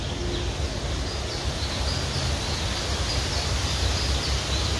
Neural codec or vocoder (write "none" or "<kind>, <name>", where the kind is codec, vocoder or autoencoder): none